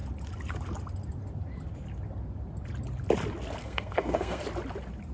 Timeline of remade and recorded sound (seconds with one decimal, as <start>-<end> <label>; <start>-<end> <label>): 0.0-3.6 recorded; 3.6-4.4 remade; 4.4-5.1 recorded